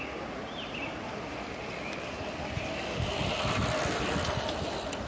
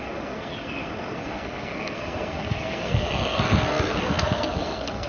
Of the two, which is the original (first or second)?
first